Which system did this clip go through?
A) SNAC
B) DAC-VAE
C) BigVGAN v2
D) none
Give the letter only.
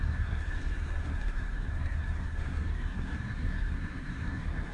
A